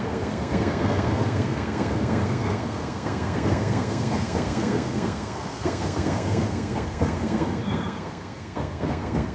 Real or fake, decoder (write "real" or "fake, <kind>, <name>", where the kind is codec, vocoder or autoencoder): fake, codec, SNAC